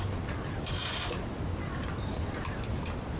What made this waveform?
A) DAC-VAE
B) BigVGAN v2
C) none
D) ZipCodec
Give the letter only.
C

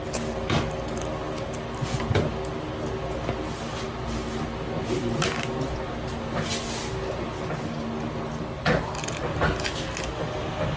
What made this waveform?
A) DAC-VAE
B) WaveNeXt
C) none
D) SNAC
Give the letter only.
C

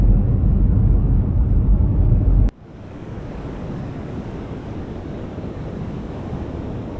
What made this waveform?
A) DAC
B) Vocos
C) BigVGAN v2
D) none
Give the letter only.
A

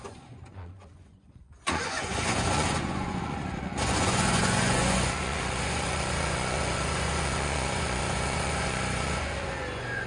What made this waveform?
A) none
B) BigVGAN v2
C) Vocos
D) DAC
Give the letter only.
C